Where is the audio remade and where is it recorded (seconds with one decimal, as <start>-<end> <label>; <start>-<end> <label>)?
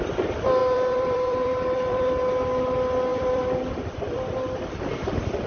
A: 0.0-0.6 recorded; 0.6-2.2 remade; 2.2-3.1 recorded; 3.1-3.8 remade; 3.8-5.5 recorded